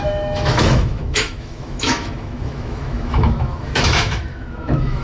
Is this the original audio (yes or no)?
no